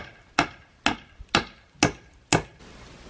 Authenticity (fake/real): real